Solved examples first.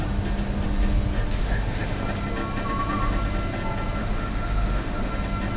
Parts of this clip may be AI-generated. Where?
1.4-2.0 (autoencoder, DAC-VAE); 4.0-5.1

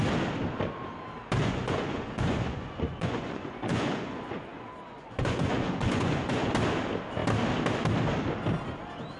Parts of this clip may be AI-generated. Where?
1.4-6.5 (vocoder, Vocos)